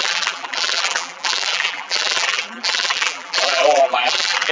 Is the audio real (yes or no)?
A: no